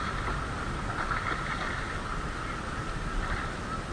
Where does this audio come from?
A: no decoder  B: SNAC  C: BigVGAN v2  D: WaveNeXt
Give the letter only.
A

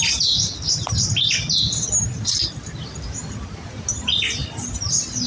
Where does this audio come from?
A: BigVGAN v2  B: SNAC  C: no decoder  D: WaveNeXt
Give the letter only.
C